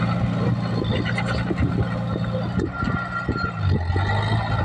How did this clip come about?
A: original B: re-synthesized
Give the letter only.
A